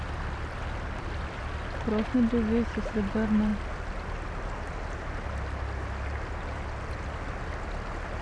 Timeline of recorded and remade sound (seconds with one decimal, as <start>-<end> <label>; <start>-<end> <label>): 0.0-8.2 recorded